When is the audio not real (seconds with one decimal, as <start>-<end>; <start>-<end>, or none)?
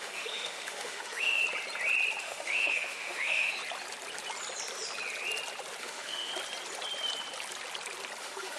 0.0-1.4; 2.2-3.6; 5.8-6.3; 8.2-8.6